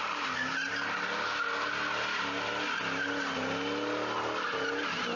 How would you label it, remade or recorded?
recorded